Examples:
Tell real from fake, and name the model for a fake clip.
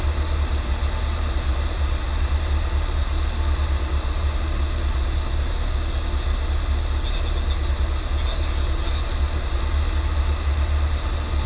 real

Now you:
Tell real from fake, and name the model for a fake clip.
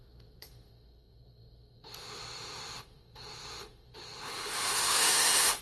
fake, autoencoder, DAC-VAE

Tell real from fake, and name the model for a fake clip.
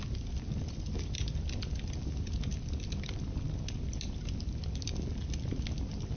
real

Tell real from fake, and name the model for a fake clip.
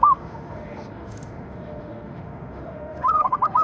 fake, autoencoder, DAC-VAE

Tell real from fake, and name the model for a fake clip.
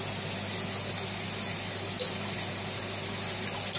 real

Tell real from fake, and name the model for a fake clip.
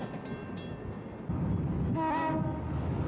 real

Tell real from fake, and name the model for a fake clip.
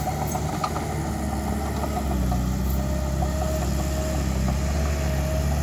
real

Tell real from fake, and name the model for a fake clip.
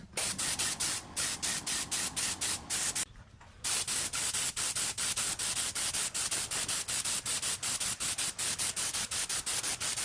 real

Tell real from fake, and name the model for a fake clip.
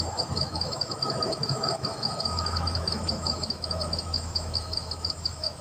fake, autoencoder, DAC-VAE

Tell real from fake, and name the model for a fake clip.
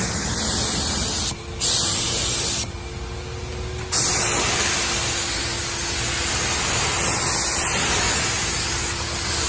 real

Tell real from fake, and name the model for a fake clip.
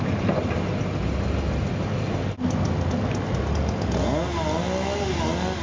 real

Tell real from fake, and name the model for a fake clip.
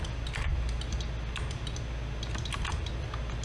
real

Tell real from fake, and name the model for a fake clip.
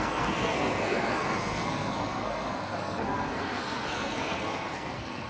fake, codec, SNAC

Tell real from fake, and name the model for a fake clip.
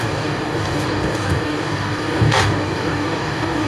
fake, codec, DAC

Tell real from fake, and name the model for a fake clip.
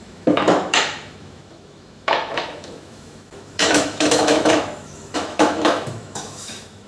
fake, autoencoder, DAC-VAE